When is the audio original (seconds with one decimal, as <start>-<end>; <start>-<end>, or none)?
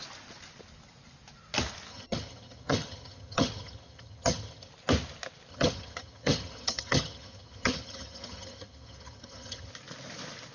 0.0-1.9; 4.7-5.5; 9.7-10.5